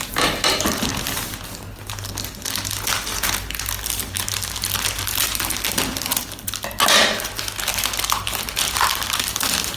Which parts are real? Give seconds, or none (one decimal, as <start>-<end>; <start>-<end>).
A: 0.0-9.8